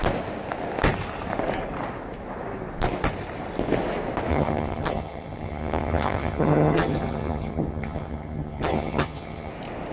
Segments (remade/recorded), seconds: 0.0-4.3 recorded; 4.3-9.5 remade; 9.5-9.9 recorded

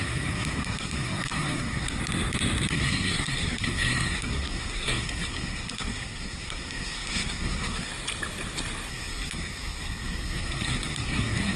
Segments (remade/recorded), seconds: 0.0-2.0 remade; 2.0-2.7 recorded; 2.7-7.9 remade; 7.9-8.9 recorded; 8.9-11.6 remade